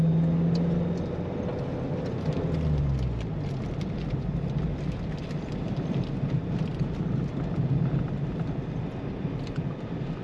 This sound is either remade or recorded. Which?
recorded